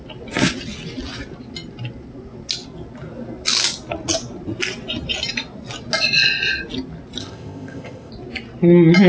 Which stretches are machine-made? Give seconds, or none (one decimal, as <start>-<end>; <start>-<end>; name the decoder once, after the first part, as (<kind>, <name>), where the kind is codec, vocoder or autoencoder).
7.2-8.1 (codec, ZipCodec)